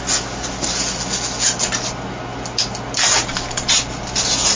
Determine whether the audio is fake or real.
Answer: real